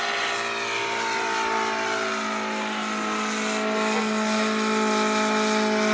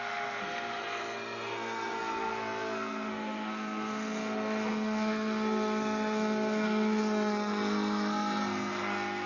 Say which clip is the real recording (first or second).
first